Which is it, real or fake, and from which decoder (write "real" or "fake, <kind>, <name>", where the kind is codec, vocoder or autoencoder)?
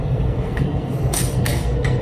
fake, codec, SNAC